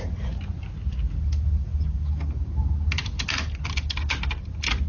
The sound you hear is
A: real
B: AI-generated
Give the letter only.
A